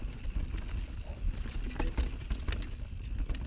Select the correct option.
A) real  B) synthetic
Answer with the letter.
A